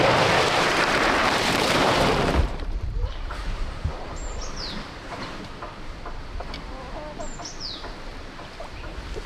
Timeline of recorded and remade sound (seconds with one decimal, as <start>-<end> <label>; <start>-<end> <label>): 0.0-1.2 recorded; 1.2-5.4 remade; 5.4-8.1 recorded; 8.1-8.6 remade; 8.6-9.3 recorded